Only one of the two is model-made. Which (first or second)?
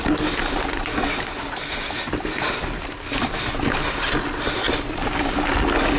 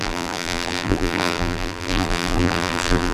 second